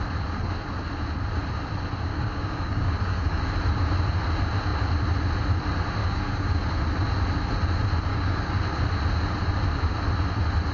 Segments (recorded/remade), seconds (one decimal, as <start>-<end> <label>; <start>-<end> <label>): 0.0-2.1 recorded; 2.1-3.4 remade; 3.4-6.0 recorded; 6.0-6.6 remade; 6.6-8.1 recorded; 8.1-8.6 remade; 8.6-10.7 recorded